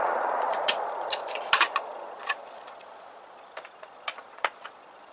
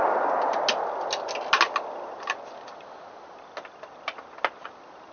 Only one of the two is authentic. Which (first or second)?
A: second